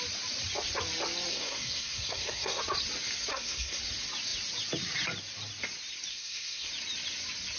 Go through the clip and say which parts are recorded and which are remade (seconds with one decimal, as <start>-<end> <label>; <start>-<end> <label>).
0.0-1.3 recorded; 1.3-2.6 remade; 2.6-3.3 recorded; 3.3-3.8 remade; 3.8-6.1 recorded; 6.1-6.7 remade; 6.7-7.6 recorded